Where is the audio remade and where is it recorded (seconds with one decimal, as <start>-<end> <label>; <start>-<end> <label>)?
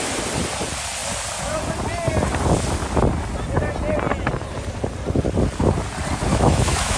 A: 0.0-6.3 recorded; 6.3-7.0 remade